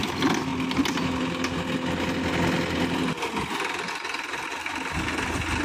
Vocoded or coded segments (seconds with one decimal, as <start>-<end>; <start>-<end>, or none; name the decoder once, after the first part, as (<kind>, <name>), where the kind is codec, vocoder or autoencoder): none